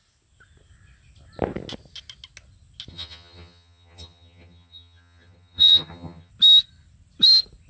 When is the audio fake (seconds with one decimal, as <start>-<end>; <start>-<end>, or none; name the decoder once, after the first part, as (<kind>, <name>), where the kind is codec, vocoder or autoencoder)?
2.9-6.3 (vocoder, HiFi-GAN)